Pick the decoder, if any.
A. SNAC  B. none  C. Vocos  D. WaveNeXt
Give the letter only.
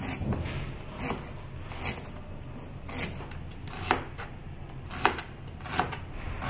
B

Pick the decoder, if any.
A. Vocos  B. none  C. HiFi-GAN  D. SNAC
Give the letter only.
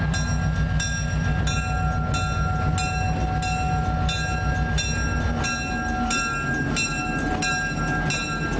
B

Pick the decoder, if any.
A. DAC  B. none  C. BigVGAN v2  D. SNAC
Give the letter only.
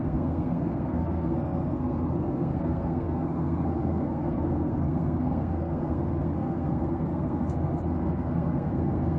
D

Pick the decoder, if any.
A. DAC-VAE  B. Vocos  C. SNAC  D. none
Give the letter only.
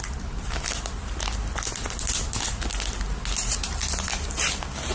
D